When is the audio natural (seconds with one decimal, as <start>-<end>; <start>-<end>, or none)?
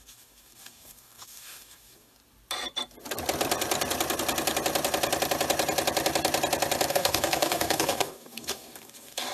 2.2-6.9